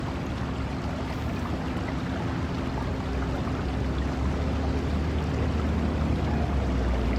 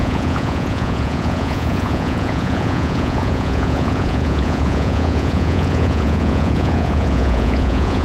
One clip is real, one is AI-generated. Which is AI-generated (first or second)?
second